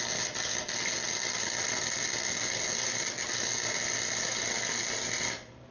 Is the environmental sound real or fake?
real